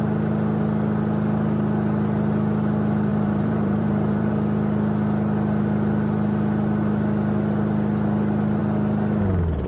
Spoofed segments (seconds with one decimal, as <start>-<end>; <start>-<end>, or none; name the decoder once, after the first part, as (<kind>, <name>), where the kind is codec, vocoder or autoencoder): 3.1-4.3 (vocoder, BigVGAN v2)